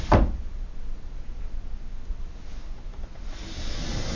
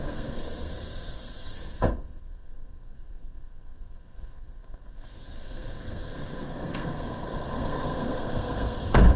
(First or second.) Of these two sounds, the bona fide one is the first